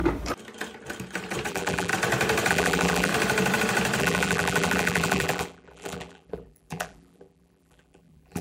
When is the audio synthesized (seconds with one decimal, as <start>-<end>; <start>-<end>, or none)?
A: 1.5-1.9; 2.5-3.1; 4.0-8.4